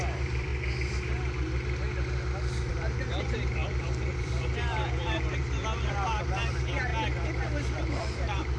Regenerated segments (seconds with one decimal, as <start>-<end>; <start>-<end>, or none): 0.0-0.5; 2.7-6.9; 7.9-8.6